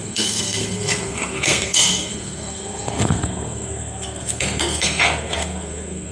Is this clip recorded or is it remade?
remade